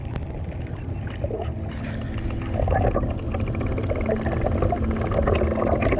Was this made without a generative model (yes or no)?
yes